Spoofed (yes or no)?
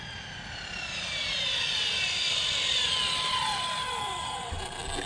no